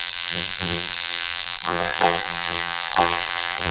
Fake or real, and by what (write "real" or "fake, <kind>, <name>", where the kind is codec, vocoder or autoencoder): fake, vocoder, BigVGAN v2